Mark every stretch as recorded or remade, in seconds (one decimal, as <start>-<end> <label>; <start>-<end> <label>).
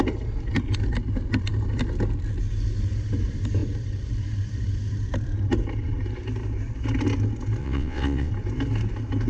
0.0-7.6 recorded; 7.6-8.3 remade; 8.3-9.3 recorded